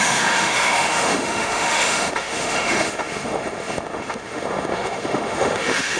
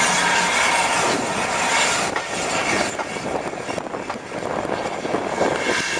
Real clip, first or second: second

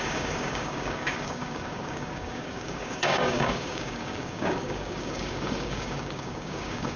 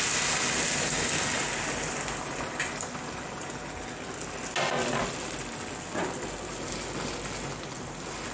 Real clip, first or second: second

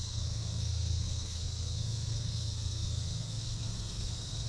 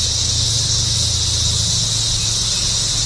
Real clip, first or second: second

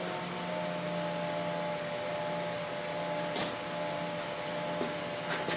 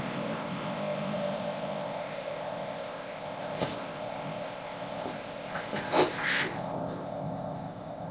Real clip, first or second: first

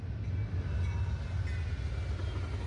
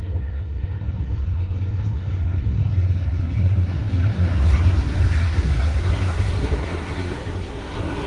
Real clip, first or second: first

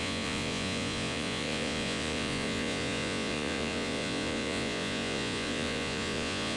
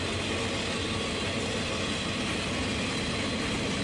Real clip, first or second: second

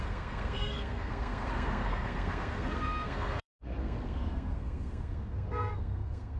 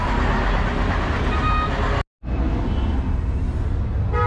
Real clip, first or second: second